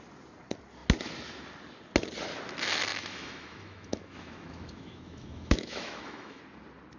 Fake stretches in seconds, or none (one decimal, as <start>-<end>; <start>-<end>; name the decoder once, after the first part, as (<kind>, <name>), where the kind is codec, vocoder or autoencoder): 2.9-6.4 (autoencoder, DAC-VAE)